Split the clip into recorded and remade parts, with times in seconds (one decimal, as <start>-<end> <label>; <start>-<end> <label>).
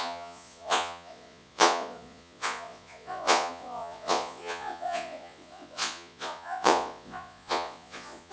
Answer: 0.0-8.3 remade